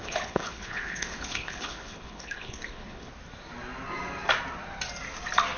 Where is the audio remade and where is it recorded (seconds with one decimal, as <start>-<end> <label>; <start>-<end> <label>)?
0.0-3.1 remade; 3.1-5.6 recorded